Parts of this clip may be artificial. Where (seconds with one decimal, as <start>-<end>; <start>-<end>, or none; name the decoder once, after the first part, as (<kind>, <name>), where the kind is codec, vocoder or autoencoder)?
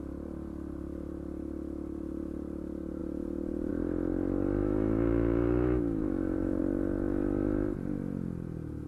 4.6-6.6 (autoencoder, DAC-VAE)